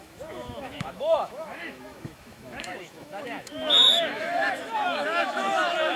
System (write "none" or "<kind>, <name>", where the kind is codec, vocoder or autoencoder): autoencoder, DAC-VAE